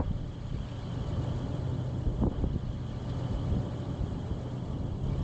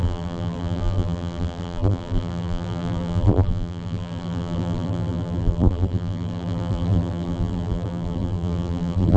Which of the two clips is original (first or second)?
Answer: first